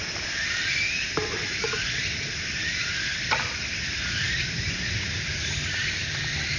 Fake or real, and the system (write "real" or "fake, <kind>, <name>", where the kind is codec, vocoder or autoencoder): real